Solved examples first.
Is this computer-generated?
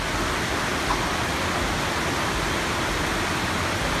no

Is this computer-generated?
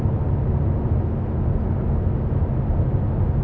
no